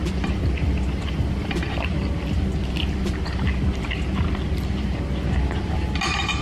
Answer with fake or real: real